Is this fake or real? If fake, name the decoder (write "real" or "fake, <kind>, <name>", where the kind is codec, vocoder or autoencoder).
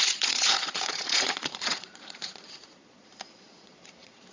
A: fake, vocoder, Vocos